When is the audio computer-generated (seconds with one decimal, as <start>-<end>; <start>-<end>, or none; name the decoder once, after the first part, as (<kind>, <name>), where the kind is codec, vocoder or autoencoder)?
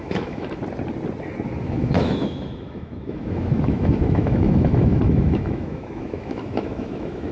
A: 0.0-0.6 (autoencoder, DAC-VAE); 1.6-7.3